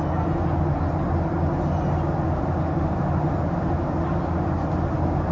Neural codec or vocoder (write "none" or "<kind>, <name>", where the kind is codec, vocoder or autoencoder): none